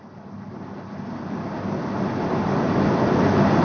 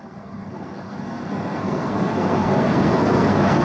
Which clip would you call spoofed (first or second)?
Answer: second